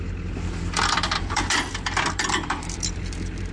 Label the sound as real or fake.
fake